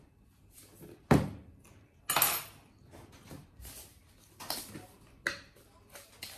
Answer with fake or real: real